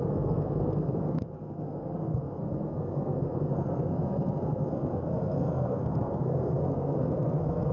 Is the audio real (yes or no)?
no